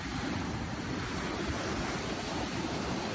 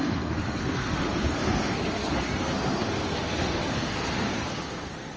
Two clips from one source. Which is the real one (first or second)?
first